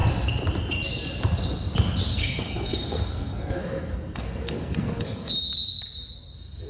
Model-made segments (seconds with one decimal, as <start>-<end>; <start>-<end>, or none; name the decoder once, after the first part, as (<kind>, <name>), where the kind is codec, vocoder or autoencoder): 2.1-5.3 (codec, SNAC)